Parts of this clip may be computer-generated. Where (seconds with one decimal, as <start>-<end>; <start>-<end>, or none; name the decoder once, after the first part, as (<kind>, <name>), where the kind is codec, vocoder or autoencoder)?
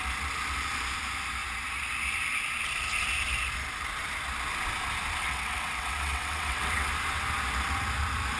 5.2-6.9 (vocoder, WaveNeXt)